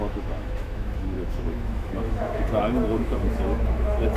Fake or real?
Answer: fake